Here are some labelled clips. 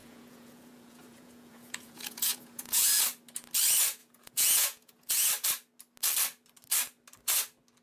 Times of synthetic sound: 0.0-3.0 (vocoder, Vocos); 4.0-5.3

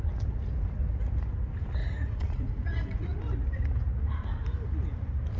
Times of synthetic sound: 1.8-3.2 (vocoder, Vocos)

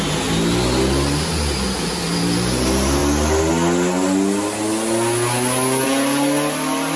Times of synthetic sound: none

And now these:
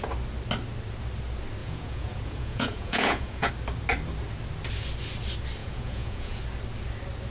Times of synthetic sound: 1.6-3.5 (vocoder, Vocos); 5.6-6.4

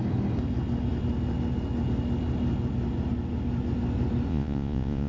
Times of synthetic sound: 4.3-5.1 (vocoder, Vocos)